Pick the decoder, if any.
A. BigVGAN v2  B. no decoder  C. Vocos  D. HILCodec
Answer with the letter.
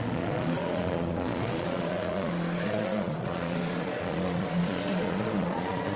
C